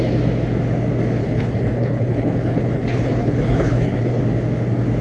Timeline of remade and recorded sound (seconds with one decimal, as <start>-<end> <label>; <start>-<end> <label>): 0.0-1.2 recorded; 1.2-4.2 remade; 4.2-5.0 recorded